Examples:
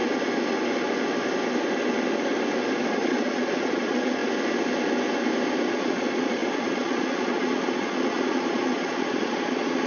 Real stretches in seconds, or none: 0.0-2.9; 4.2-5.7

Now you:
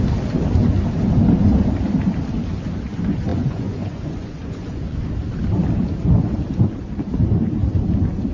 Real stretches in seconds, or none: 0.0-3.3; 5.0-8.3

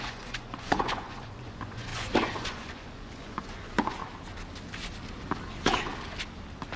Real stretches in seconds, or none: 4.0-5.5; 5.9-6.8

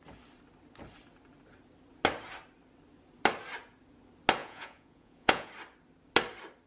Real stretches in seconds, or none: 0.0-4.4; 5.5-6.7

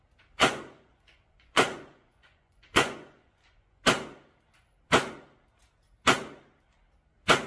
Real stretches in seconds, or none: 0.0-0.4; 3.8-7.5

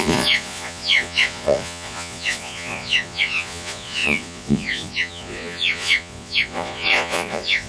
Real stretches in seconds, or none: none

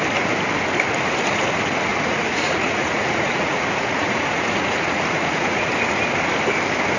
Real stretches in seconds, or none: 0.0-1.9; 5.7-7.0